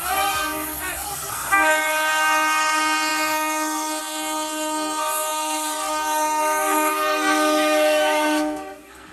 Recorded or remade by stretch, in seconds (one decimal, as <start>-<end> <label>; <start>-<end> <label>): 0.0-9.1 remade